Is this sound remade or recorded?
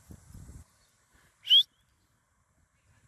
recorded